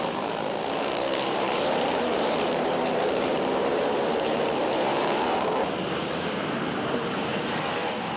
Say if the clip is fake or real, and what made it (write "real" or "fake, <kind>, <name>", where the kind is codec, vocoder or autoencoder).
fake, vocoder, BigVGAN v2